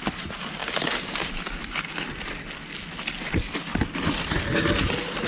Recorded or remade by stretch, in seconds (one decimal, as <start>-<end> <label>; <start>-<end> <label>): 0.0-5.3 recorded